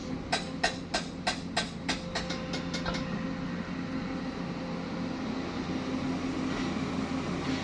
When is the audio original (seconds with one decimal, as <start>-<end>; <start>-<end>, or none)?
0.0-7.6